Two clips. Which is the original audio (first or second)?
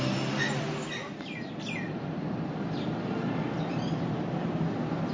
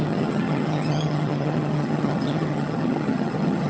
first